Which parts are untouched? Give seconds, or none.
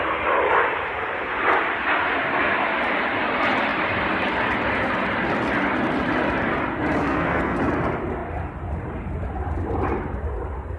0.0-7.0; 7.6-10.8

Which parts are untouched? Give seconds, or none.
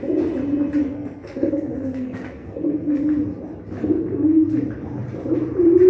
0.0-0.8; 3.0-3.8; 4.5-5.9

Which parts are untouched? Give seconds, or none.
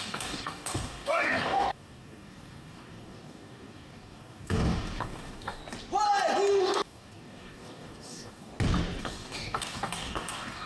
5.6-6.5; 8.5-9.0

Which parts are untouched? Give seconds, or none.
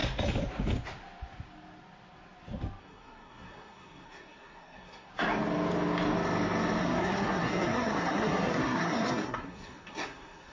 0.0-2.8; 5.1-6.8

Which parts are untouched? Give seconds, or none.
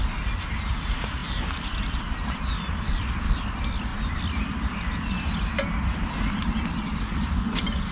0.0-7.9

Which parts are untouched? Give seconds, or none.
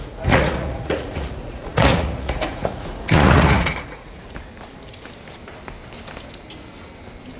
4.4-7.4